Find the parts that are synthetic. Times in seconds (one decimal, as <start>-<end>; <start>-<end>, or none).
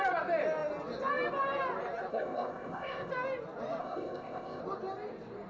2.1-3.1; 3.8-4.6